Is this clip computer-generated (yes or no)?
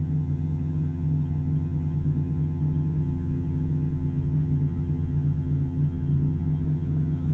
yes